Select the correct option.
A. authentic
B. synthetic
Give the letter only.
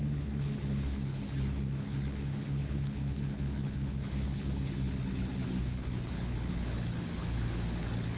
B